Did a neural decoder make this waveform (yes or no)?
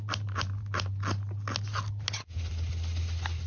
no